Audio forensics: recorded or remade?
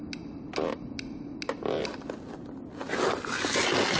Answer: recorded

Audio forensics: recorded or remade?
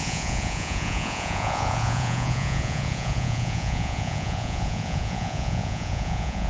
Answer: remade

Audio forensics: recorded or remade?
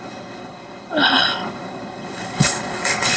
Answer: remade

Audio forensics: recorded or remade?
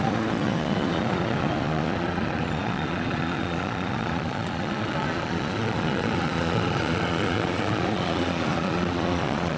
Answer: remade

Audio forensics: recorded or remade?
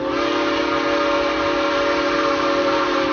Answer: recorded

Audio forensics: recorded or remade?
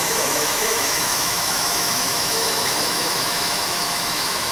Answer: remade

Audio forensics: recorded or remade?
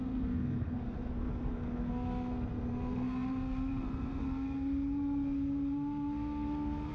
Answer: remade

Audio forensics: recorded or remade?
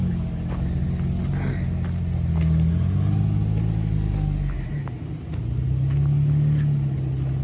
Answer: recorded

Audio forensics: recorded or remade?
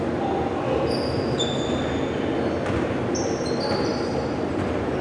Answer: recorded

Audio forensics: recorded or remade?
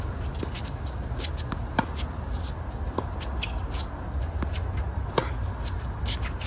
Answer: recorded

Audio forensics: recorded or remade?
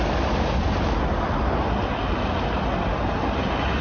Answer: recorded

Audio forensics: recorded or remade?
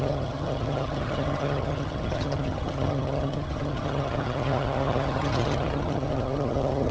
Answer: remade